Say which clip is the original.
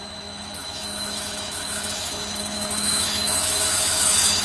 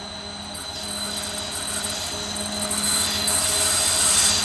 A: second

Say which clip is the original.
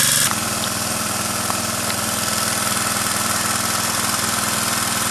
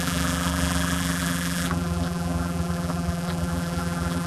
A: first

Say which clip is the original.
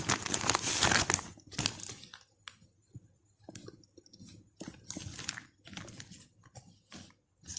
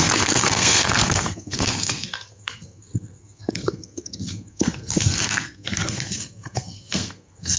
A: first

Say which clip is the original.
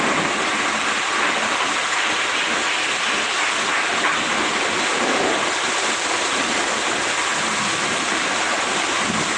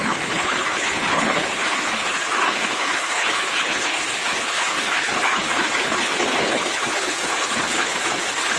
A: first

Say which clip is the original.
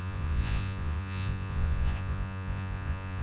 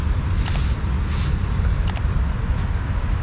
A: second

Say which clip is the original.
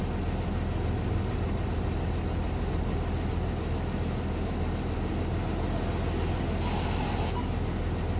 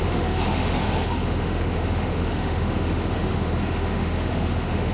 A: first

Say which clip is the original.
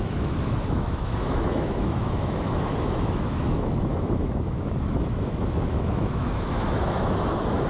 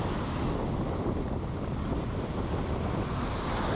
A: second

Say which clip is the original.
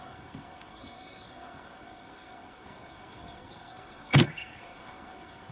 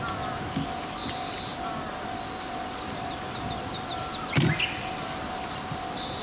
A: second